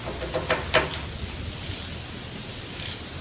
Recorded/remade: recorded